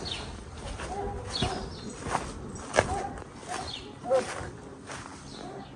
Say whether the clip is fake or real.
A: real